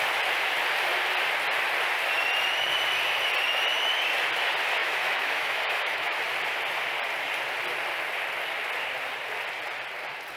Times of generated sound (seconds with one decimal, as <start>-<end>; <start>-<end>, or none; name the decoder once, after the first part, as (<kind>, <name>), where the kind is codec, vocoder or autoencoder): 4.8-6.2 (autoencoder, DAC-VAE)